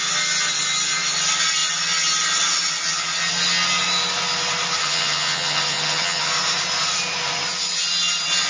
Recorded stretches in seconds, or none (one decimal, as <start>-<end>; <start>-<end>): 0.0-4.8; 6.3-8.5